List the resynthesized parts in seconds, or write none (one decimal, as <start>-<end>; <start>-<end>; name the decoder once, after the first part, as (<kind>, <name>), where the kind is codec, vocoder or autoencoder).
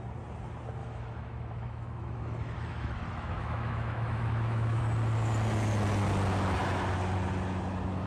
0.8-4.8 (autoencoder, DAC-VAE)